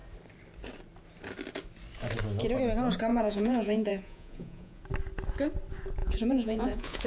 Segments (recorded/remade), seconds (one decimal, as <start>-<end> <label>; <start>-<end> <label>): 0.0-3.1 recorded; 3.1-4.8 remade; 4.8-6.0 recorded; 6.0-7.1 remade